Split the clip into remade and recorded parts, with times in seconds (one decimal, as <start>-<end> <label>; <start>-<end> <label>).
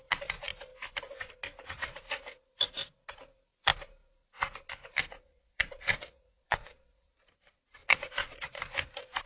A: 0.0-5.0 recorded; 5.0-8.6 remade; 8.6-9.3 recorded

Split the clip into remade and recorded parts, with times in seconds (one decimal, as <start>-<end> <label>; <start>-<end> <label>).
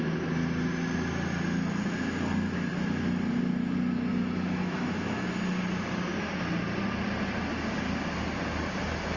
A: 0.0-4.1 recorded; 4.1-5.3 remade; 5.3-9.2 recorded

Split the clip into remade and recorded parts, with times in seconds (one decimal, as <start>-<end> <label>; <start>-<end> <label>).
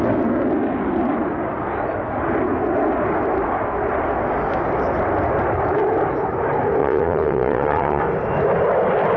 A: 0.0-6.8 recorded; 6.8-8.0 remade; 8.0-9.2 recorded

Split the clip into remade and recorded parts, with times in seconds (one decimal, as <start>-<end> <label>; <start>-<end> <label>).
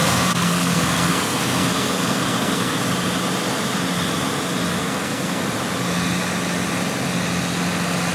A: 0.0-2.8 remade; 2.8-4.8 recorded; 4.8-5.4 remade; 5.4-8.1 recorded